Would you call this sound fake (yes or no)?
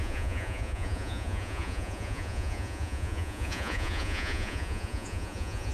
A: yes